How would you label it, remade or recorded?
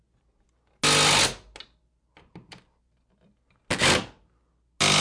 recorded